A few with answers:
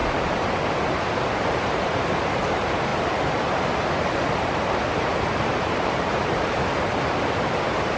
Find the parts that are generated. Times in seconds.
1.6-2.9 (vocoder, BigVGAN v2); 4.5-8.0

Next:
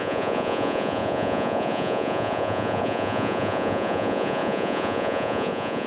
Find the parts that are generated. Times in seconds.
0.0-5.9 (vocoder, Vocos)

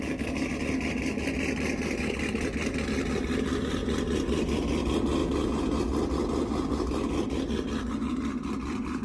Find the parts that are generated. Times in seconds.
none

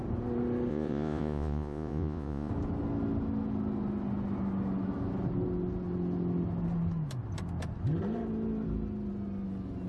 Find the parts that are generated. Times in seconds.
0.7-2.5 (vocoder, Vocos)

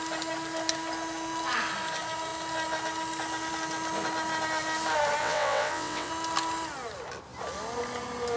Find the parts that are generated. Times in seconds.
5.2-6.1 (vocoder, WaveNeXt)

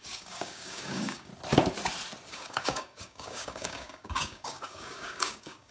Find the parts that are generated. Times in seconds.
0.0-1.3 (codec, DAC); 2.3-5.7